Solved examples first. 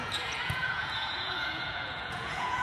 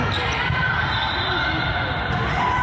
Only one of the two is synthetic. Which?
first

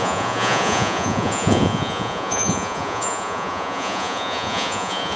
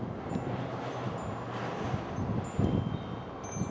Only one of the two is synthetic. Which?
first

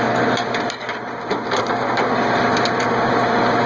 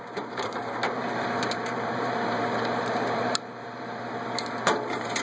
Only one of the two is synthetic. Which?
second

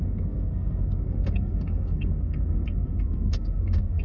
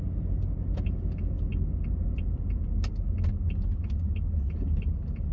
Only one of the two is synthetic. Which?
first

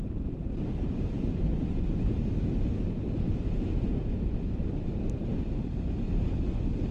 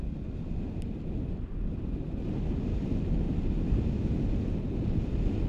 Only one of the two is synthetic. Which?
first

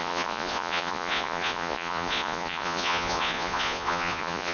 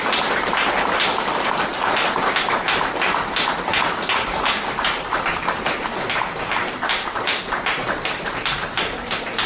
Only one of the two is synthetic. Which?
first